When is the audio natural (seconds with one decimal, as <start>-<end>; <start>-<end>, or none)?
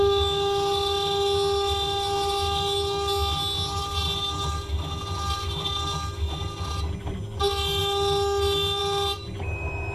0.0-9.9